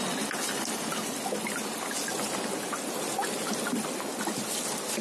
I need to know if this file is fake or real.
real